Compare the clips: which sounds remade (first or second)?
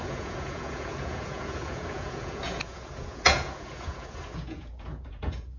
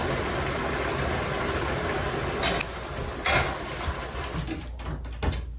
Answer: first